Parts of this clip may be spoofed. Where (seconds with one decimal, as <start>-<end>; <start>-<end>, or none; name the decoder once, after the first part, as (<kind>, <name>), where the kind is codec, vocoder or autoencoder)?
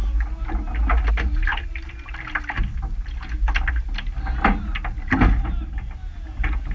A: none